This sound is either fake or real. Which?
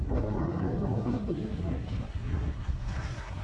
fake